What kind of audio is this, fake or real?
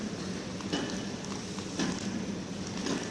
real